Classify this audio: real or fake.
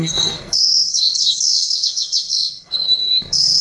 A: fake